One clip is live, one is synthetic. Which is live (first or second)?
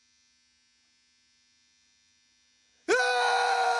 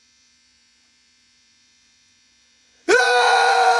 first